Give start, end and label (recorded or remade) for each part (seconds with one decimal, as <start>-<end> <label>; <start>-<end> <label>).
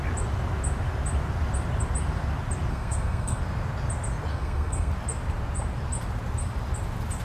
0.0-2.7 recorded; 2.7-3.4 remade; 3.4-4.3 recorded; 4.3-4.9 remade; 4.9-7.2 recorded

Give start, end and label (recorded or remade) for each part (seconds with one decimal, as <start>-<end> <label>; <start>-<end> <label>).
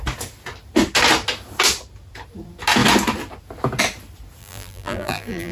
0.0-4.4 recorded; 4.4-5.5 remade